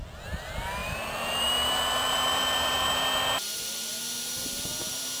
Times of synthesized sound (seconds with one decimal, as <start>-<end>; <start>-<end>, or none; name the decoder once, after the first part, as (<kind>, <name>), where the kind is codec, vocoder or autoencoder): 0.8-3.9 (vocoder, BigVGAN v2)